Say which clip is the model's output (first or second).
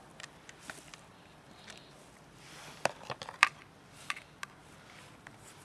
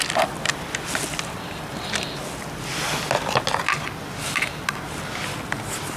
first